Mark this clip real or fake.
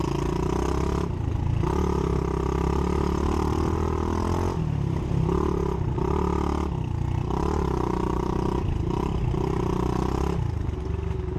real